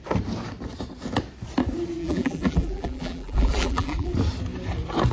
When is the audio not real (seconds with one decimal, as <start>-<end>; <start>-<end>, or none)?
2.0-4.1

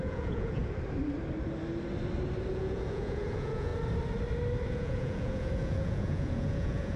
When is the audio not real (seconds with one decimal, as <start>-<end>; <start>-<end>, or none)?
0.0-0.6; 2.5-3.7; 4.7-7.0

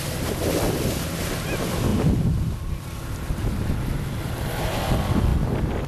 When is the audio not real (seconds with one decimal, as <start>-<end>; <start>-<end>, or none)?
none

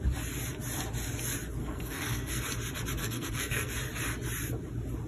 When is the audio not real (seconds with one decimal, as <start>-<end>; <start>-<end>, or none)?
1.6-2.4; 3.0-3.7

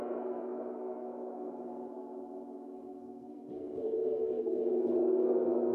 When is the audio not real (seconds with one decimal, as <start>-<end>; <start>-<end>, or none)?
0.0-5.7

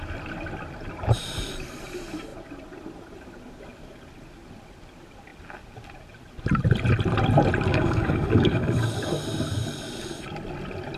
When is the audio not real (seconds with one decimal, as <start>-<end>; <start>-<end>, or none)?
7.7-9.1; 9.6-10.2

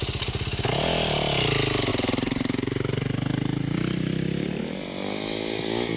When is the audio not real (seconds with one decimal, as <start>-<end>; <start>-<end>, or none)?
1.9-4.6